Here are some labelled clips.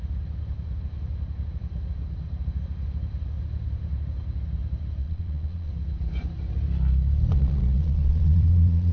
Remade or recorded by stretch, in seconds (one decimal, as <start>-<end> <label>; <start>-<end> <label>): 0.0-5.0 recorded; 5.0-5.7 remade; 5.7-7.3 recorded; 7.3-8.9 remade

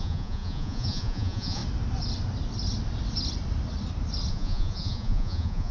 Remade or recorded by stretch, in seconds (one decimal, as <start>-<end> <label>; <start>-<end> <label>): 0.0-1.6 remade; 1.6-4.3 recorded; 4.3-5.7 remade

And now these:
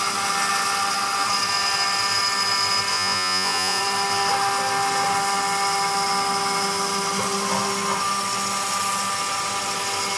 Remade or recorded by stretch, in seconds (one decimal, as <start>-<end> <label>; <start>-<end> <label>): 0.0-2.9 recorded; 2.9-3.8 remade; 3.8-10.2 recorded